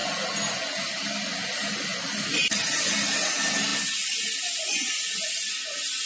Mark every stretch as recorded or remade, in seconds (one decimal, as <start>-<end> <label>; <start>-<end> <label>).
0.0-6.1 recorded